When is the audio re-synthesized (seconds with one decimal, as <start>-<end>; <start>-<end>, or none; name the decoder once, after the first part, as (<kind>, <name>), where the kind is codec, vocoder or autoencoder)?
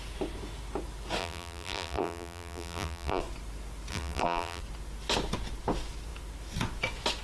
1.2-3.2 (vocoder, BigVGAN v2); 3.9-4.6